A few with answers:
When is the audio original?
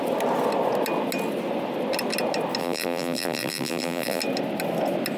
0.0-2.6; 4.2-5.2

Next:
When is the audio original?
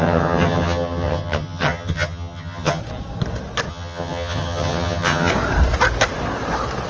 2.8-3.7; 5.3-6.9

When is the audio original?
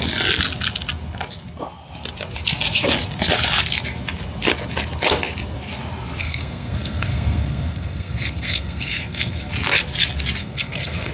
0.0-6.2; 9.5-10.4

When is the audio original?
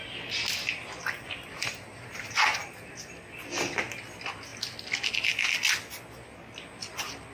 0.0-0.8; 2.9-7.3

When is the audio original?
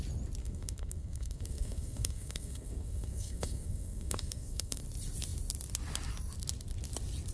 0.0-0.4; 4.8-7.3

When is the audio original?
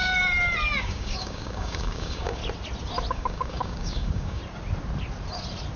0.0-0.8; 2.4-3.1; 4.4-5.8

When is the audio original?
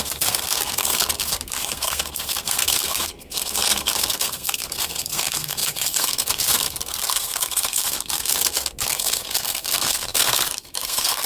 none